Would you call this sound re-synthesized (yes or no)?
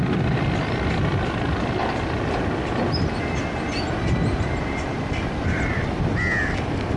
no